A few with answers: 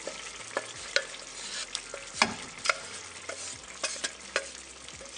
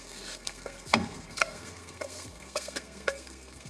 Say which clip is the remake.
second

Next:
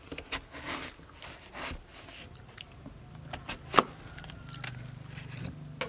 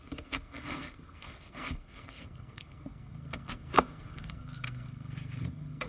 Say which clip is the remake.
second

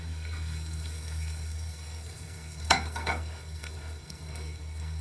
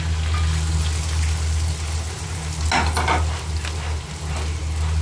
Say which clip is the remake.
first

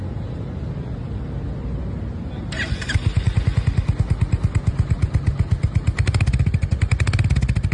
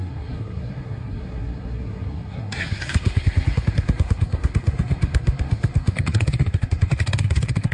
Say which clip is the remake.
second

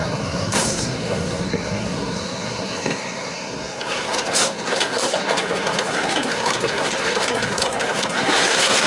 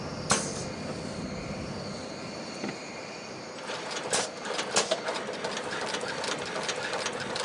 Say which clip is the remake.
first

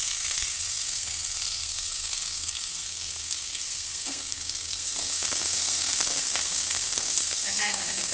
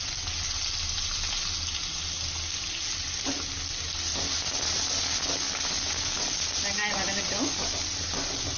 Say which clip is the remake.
first